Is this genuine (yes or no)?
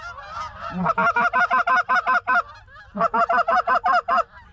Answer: yes